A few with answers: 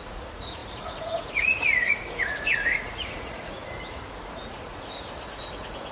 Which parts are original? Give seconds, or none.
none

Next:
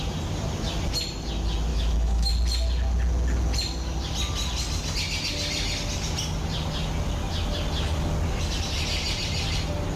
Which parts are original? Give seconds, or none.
0.0-1.7; 2.3-10.0

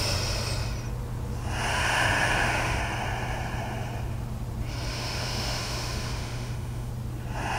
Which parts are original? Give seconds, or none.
0.0-1.7; 2.8-4.9; 6.9-7.6

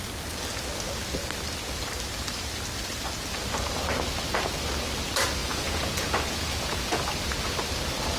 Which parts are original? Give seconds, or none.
0.0-5.4; 7.1-8.2

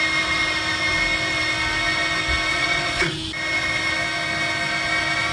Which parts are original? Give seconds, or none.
0.0-2.5; 3.1-5.3

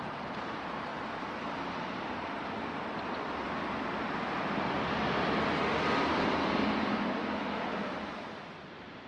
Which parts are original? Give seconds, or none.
0.9-6.0; 7.2-7.7

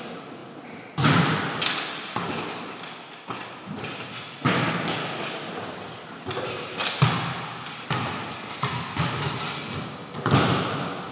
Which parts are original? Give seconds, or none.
0.0-11.1